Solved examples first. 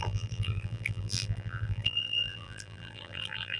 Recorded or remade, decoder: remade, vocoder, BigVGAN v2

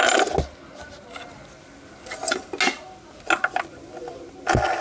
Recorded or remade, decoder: recorded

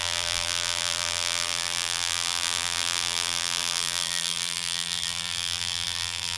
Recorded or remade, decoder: remade, vocoder, BigVGAN v2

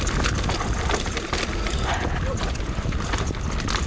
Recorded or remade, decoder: recorded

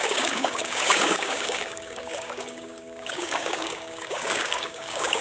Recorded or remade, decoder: remade, codec, DAC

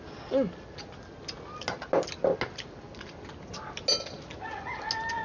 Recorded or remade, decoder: recorded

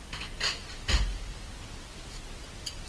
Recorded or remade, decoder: recorded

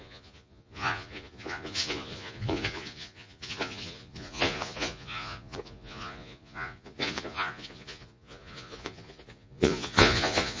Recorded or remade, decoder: remade, vocoder, Vocos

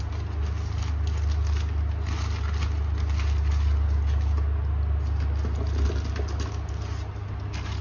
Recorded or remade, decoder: recorded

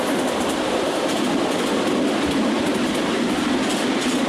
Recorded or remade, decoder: recorded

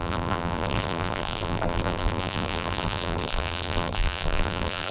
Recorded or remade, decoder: remade, vocoder, BigVGAN v2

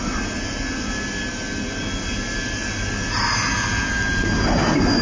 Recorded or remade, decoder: recorded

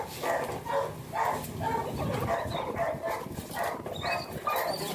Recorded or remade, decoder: recorded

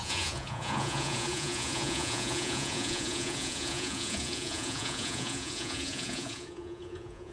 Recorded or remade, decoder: remade, vocoder, Vocos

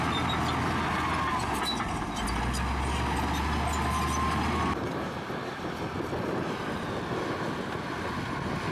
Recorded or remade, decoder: recorded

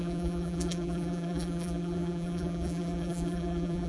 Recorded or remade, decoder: remade, vocoder, BigVGAN v2